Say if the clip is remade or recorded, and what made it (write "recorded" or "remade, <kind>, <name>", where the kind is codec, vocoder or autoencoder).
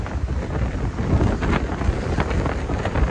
recorded